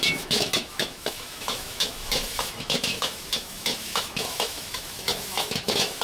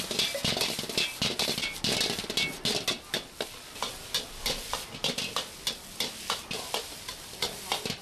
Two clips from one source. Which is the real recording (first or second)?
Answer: second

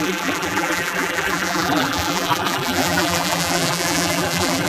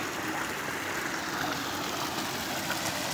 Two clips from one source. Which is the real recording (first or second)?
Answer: second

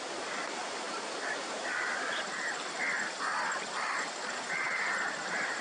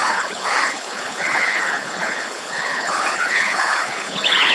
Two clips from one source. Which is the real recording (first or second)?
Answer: first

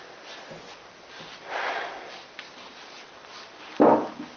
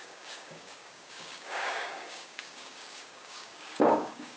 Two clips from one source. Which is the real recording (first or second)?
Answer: first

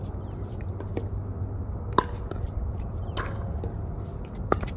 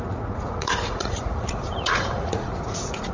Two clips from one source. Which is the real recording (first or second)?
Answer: first